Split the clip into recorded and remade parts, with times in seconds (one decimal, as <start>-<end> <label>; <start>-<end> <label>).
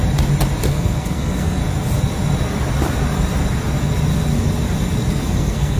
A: 0.0-0.7 recorded; 0.7-1.6 remade; 1.6-5.1 recorded; 5.1-5.8 remade